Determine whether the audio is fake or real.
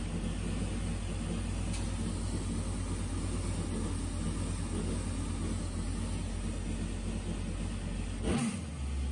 real